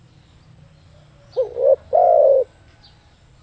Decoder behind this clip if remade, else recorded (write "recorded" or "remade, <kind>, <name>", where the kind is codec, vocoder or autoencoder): recorded